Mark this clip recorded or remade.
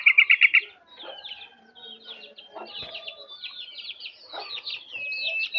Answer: recorded